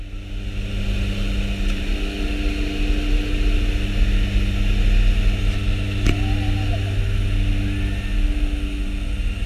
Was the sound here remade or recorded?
recorded